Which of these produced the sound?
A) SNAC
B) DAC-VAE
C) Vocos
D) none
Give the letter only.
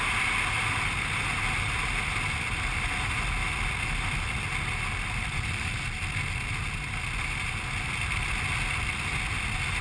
D